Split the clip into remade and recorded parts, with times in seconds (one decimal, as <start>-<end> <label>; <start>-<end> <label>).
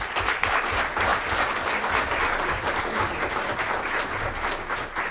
0.0-5.1 recorded